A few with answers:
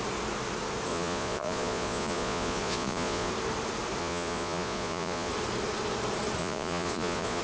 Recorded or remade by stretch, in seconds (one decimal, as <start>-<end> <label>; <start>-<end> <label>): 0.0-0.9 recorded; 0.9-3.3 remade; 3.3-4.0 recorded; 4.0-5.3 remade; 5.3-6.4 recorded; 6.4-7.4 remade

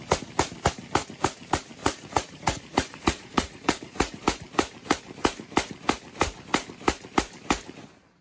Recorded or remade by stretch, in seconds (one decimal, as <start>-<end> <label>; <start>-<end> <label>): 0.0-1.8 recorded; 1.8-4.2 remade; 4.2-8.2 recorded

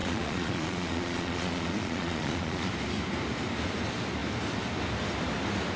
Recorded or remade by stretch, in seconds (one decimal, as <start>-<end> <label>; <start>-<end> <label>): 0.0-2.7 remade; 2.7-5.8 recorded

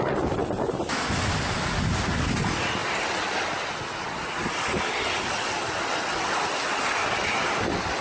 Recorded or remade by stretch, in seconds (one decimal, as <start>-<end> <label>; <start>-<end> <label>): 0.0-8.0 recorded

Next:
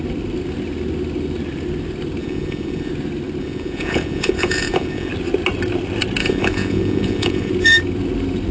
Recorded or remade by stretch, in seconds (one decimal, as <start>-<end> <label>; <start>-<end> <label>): 0.0-2.2 recorded; 2.2-2.9 remade; 2.9-3.4 recorded; 3.4-5.1 remade; 5.1-6.2 recorded; 6.2-7.5 remade; 7.5-8.5 recorded